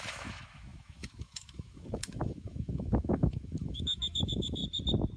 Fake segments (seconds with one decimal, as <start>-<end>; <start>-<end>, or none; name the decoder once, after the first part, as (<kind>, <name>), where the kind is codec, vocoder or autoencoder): 0.0-4.6 (autoencoder, DAC-VAE)